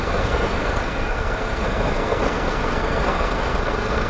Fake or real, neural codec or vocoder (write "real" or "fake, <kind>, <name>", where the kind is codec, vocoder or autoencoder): fake, codec, SNAC